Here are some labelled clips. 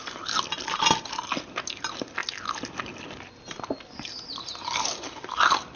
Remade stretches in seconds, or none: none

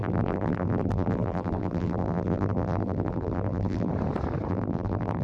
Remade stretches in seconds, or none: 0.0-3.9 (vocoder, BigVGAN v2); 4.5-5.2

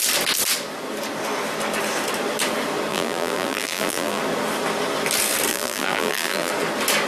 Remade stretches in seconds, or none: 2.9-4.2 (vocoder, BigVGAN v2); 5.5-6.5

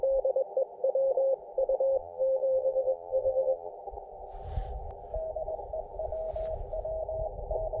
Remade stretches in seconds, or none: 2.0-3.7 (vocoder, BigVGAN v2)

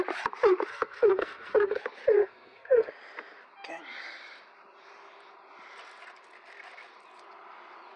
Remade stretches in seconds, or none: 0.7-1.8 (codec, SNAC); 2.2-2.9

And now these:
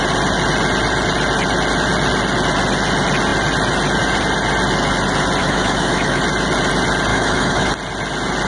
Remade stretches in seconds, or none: 5.4-6.2 (autoencoder, DAC-VAE); 7.1-7.7

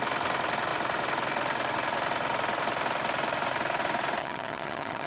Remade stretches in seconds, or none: 4.2-5.1 (vocoder, HiFi-GAN)

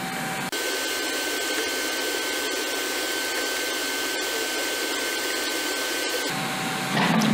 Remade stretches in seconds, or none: none